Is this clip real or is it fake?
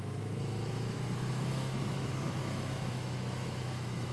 fake